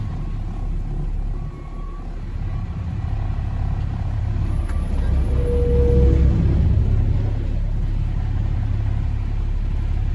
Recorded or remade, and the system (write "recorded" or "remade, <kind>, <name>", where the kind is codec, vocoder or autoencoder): recorded